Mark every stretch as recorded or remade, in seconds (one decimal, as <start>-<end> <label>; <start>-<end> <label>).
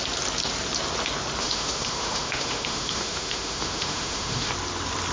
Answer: 0.0-1.4 recorded; 1.4-4.5 remade; 4.5-5.1 recorded